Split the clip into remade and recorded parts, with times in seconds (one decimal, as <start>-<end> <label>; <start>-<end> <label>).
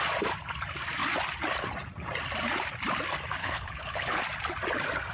0.0-3.4 recorded; 3.4-4.2 remade; 4.2-5.1 recorded